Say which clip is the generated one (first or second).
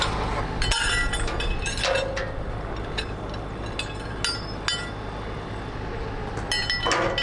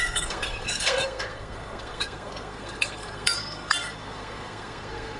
second